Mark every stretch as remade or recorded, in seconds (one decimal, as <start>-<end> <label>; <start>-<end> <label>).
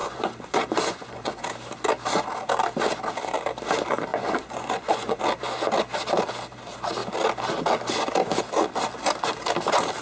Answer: 0.0-1.4 remade; 1.4-4.1 recorded; 4.1-5.2 remade; 5.2-10.0 recorded